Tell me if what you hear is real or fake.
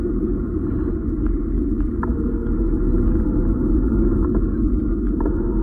real